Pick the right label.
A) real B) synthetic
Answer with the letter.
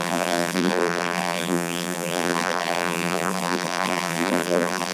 B